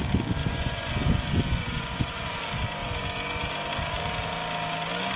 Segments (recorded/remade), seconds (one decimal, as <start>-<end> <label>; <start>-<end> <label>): 0.0-0.4 recorded; 0.4-0.9 remade; 0.9-1.5 recorded; 1.5-2.4 remade; 2.4-5.2 recorded